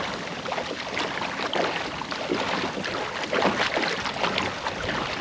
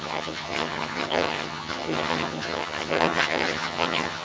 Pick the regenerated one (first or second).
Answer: second